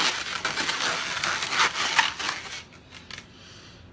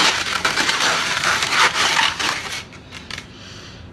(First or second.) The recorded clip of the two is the first